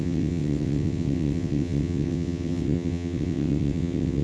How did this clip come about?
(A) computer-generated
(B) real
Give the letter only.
A